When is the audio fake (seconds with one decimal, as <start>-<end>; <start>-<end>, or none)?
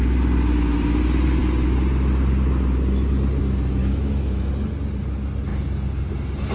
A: 3.8-4.5